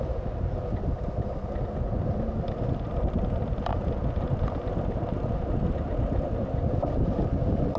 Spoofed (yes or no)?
no